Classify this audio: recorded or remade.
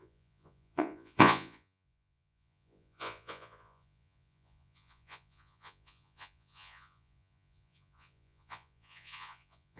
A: remade